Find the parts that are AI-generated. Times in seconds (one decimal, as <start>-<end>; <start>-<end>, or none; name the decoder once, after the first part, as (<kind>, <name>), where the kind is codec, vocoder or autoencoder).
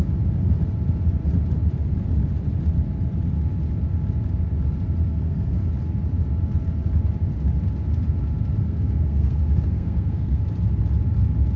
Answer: 5.2-5.7 (codec, SNAC); 8.6-10.4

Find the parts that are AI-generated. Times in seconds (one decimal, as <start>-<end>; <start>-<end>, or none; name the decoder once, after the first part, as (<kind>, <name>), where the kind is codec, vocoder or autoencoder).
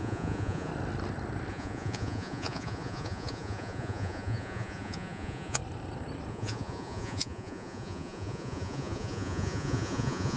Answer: 0.0-0.7 (vocoder, Vocos); 1.5-5.6; 6.3-10.4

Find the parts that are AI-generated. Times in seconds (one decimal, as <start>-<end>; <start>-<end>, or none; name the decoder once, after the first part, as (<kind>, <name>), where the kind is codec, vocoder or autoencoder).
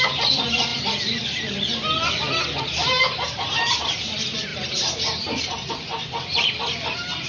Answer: none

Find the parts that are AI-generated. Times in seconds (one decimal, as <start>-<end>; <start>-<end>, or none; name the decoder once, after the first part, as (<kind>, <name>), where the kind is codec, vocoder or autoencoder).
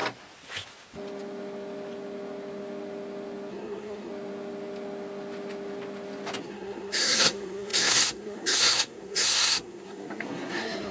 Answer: 3.5-4.1 (codec, SNAC); 6.4-10.9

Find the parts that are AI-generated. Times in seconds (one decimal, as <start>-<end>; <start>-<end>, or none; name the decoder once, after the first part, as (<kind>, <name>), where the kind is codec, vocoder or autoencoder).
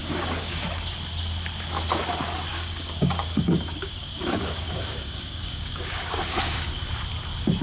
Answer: 0.0-0.6 (codec, DAC); 2.5-6.8